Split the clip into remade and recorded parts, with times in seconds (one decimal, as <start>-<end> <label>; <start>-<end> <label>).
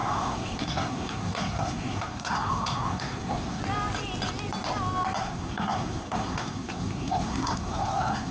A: 0.0-3.6 remade; 3.6-5.2 recorded; 5.2-8.3 remade